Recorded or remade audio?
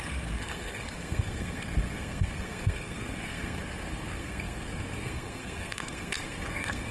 remade